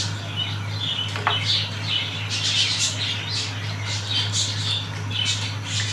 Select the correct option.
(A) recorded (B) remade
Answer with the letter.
A